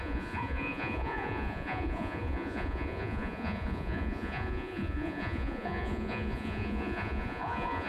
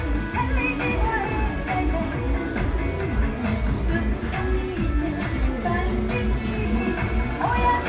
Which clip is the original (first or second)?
second